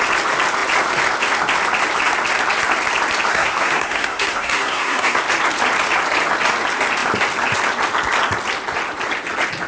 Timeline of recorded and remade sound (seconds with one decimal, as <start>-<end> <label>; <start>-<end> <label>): 0.0-3.3 recorded; 3.3-5.2 remade; 5.2-9.7 recorded